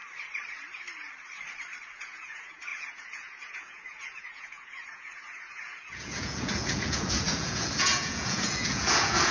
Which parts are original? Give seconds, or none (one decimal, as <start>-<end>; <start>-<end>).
0.0-1.9